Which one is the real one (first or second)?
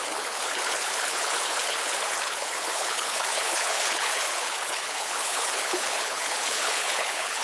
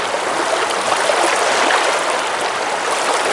second